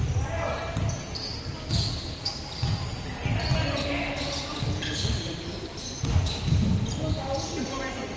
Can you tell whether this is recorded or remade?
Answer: recorded